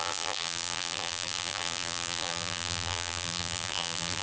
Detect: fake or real fake